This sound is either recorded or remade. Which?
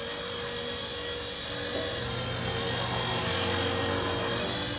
recorded